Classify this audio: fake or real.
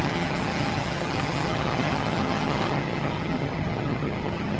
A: fake